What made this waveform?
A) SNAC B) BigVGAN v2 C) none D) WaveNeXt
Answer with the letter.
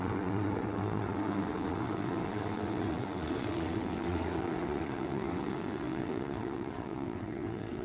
D